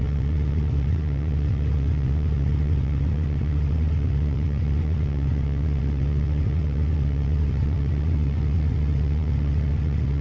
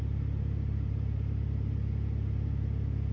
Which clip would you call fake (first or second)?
first